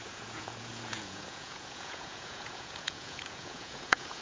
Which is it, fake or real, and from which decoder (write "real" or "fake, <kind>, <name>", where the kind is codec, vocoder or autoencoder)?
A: fake, vocoder, Vocos